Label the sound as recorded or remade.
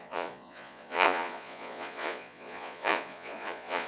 remade